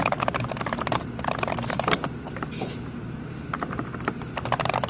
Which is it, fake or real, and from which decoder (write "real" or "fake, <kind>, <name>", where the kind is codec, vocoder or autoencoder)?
fake, vocoder, BigVGAN v2